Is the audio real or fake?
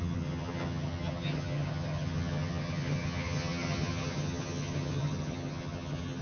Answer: fake